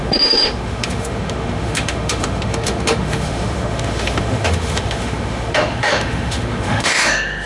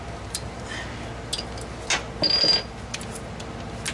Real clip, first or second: second